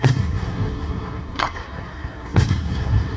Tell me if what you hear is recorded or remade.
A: remade